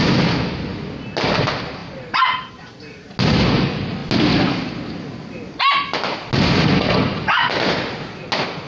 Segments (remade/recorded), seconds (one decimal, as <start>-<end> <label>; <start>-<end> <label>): 0.0-8.7 recorded